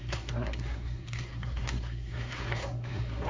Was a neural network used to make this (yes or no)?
yes